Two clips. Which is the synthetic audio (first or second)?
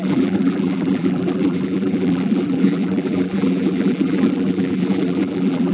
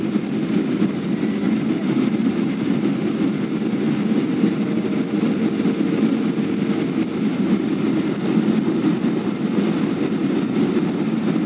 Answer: first